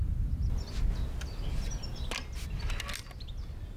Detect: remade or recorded recorded